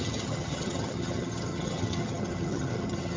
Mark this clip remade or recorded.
remade